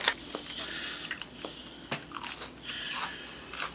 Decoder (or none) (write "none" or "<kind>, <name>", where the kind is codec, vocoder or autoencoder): none